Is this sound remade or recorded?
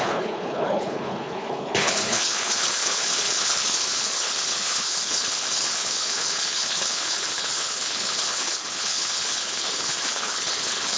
remade